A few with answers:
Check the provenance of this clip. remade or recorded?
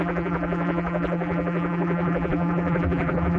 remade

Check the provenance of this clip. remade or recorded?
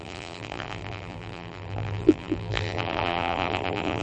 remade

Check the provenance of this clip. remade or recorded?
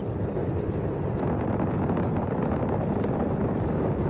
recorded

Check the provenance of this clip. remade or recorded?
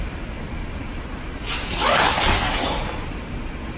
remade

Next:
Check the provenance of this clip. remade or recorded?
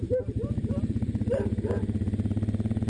remade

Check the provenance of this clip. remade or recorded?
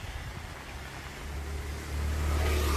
recorded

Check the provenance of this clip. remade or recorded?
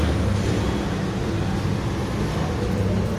recorded